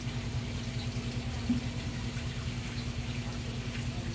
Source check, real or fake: real